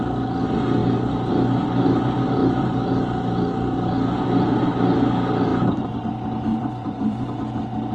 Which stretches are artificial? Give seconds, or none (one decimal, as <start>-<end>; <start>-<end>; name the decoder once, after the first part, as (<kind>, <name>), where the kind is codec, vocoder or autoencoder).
0.8-1.3 (vocoder, BigVGAN v2); 5.5-6.0; 6.5-7.2